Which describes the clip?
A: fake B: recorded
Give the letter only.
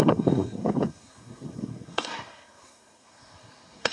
A